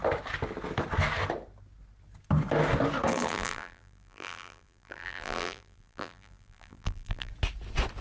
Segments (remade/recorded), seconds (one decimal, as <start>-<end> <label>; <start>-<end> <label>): 0.0-3.1 recorded; 3.1-7.3 remade; 7.3-8.0 recorded